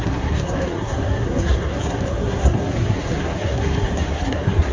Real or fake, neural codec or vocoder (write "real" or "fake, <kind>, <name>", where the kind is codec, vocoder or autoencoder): fake, codec, SNAC